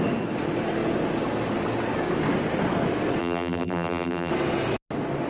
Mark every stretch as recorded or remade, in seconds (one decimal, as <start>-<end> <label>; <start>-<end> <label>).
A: 0.0-3.2 recorded; 3.2-4.3 remade; 4.3-5.3 recorded